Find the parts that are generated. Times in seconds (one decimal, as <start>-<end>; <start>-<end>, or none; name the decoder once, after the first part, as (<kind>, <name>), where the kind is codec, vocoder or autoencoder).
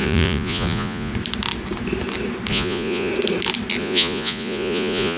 0.0-1.1 (vocoder, Vocos); 2.5-3.1; 3.8-5.2